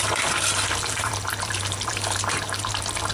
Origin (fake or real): fake